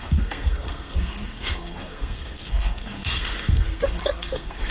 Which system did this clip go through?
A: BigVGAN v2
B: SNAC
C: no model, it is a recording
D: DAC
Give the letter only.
B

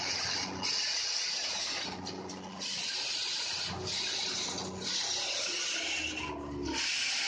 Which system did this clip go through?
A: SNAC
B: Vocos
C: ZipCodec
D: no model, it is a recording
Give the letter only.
D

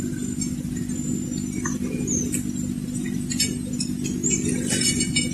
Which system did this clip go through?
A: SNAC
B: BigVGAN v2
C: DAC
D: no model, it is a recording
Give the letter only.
D